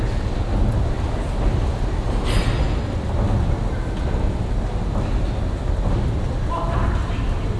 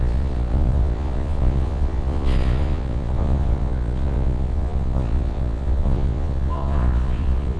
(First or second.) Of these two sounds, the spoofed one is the second